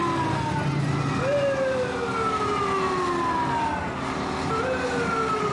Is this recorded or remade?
recorded